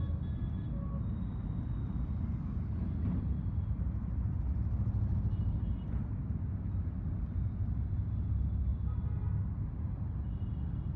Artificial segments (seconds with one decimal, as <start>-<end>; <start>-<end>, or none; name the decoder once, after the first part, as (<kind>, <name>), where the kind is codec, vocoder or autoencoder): none